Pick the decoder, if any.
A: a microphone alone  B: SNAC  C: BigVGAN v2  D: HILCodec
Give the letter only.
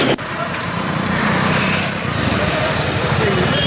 A